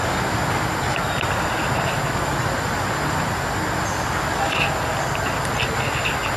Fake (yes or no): no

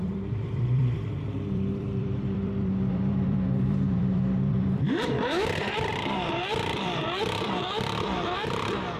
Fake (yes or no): yes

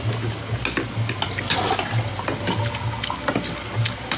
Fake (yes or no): no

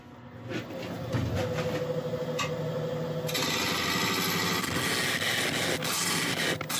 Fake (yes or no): no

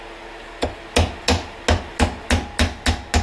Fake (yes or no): no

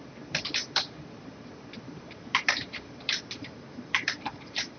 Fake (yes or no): yes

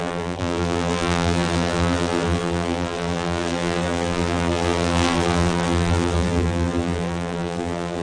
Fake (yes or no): yes